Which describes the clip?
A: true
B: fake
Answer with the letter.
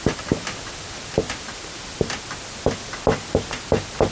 A